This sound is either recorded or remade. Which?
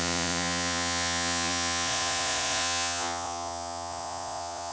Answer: remade